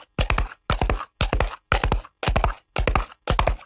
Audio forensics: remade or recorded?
recorded